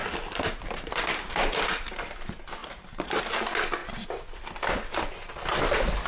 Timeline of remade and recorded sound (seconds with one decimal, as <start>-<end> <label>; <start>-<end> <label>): 0.0-2.1 remade; 2.1-2.6 recorded; 2.6-3.2 remade; 3.2-6.1 recorded